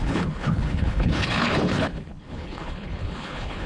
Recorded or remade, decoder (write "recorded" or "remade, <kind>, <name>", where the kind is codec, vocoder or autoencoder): remade, codec, HILCodec